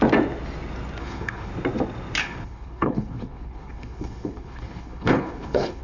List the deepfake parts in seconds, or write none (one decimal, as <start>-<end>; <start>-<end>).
1.0-1.5; 2.2-5.8